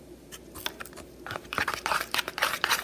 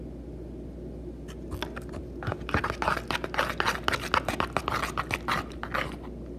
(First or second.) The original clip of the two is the second